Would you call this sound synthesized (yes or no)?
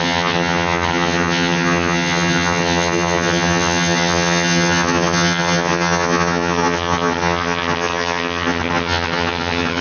yes